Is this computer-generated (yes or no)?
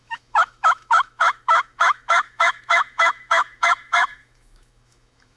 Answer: yes